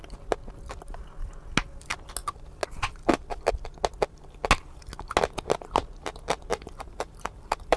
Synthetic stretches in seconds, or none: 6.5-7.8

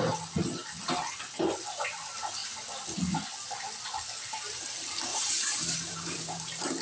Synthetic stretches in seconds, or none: 5.1-6.8

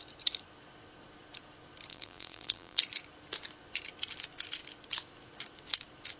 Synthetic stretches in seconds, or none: 1.9-2.8

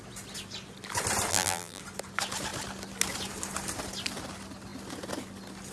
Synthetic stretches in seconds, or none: 1.3-1.8

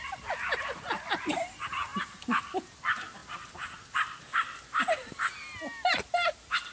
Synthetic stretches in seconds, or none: 0.0-6.7

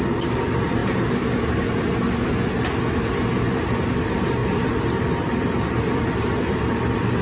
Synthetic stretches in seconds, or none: 4.4-7.2

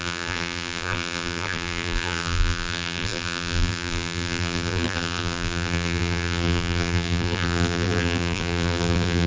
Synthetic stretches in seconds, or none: 0.0-9.3

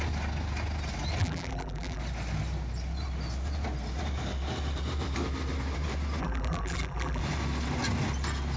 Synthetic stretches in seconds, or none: 1.2-2.0; 6.2-7.2